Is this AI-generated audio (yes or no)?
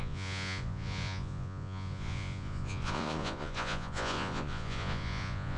yes